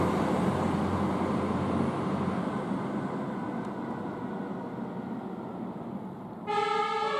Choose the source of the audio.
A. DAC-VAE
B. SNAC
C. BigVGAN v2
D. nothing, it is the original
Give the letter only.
D